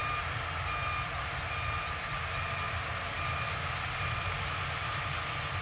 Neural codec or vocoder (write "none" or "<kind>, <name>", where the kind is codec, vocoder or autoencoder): none